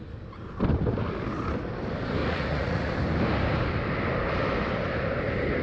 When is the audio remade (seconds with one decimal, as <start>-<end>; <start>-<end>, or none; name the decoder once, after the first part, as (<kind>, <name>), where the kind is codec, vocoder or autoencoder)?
2.2-2.9 (vocoder, Vocos)